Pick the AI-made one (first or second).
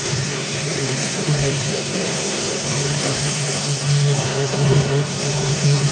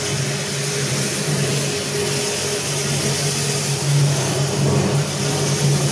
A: first